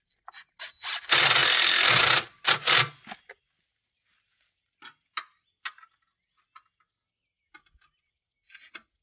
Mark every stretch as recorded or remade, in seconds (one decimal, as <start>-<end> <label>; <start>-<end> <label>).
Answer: 0.0-9.0 recorded